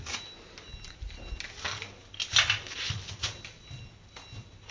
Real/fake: real